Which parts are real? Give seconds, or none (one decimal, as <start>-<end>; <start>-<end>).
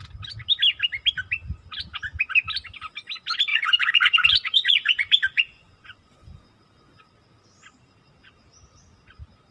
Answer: 0.0-3.5; 7.0-9.5